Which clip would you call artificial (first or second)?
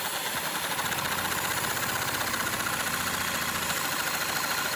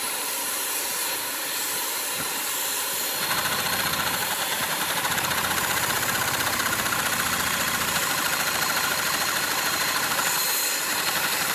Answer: second